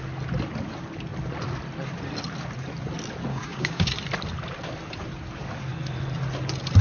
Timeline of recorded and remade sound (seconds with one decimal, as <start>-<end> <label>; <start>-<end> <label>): 0.0-3.3 recorded; 3.3-3.9 remade; 3.9-6.8 recorded